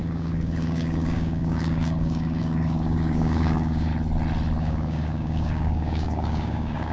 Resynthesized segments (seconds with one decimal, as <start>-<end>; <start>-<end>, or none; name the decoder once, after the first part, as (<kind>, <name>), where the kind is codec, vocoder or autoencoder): 0.0-3.9 (codec, DAC); 4.6-6.9